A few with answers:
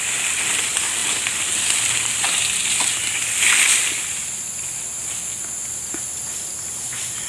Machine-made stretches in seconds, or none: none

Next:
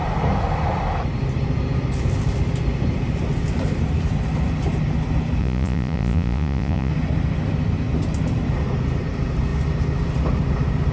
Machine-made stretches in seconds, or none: 5.4-6.9 (vocoder, Vocos)